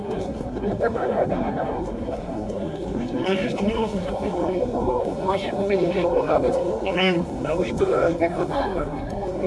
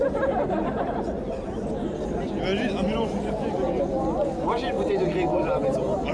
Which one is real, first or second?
second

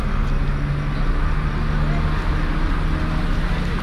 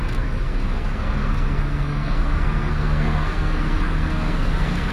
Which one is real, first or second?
first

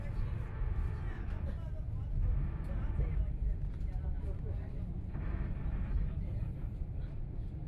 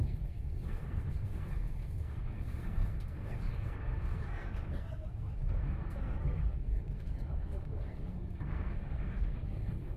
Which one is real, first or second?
first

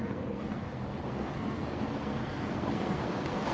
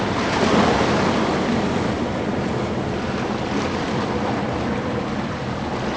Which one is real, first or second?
second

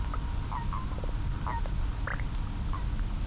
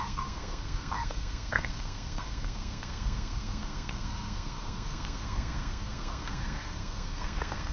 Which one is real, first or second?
first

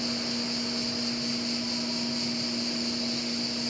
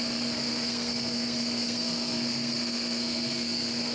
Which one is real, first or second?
first